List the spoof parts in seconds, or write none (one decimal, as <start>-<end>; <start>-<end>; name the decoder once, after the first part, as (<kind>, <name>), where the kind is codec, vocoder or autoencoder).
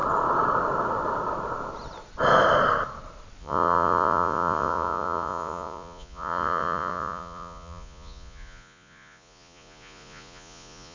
3.4-10.9 (vocoder, Vocos)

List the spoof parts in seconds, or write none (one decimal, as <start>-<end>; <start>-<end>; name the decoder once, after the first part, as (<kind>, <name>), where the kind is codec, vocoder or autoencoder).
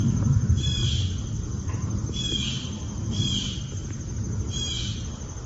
0.8-1.7 (vocoder, BigVGAN v2); 2.6-3.2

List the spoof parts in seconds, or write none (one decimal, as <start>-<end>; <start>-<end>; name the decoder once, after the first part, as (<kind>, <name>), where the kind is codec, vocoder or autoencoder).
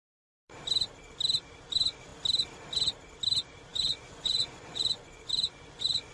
3.7-6.1 (vocoder, Vocos)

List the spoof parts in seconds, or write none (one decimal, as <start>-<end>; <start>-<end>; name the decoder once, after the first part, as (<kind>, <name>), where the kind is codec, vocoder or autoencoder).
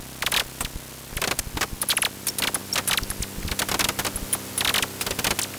none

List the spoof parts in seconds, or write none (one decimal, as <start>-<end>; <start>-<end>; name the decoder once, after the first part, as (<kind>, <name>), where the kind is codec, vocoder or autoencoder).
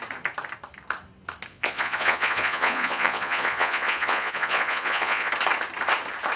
1.5-5.3 (vocoder, Vocos)